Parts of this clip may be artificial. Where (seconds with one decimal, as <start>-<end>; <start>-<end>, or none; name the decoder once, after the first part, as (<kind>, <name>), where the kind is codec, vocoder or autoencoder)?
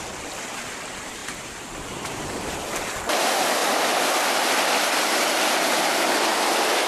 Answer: 1.2-3.0 (vocoder, BigVGAN v2)